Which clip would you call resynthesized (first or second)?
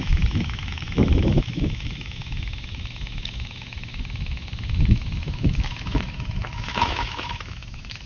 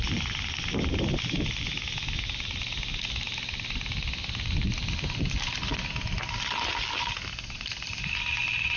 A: first